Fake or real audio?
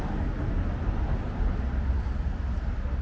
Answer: real